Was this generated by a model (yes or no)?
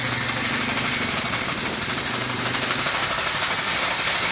no